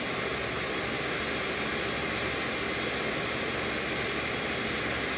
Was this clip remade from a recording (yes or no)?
no